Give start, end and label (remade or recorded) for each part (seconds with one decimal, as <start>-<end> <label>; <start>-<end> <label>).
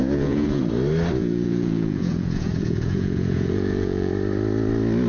0.0-0.6 remade; 0.6-1.2 recorded; 1.2-4.1 remade; 4.1-5.1 recorded